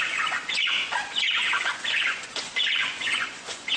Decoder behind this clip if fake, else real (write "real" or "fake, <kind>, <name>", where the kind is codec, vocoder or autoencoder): fake, vocoder, Vocos